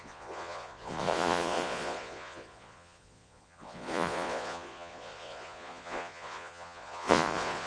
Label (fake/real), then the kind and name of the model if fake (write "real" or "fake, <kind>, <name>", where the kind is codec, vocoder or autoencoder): fake, vocoder, Vocos